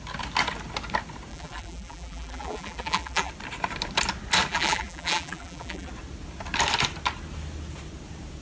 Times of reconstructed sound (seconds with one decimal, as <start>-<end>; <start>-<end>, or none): 1.3-3.3; 4.5-5.9